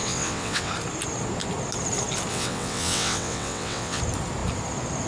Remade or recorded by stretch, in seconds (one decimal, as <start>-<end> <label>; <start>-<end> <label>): 0.0-0.7 remade; 0.7-2.3 recorded; 2.3-4.0 remade; 4.0-5.1 recorded